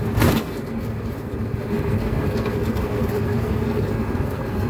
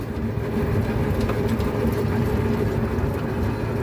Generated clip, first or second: first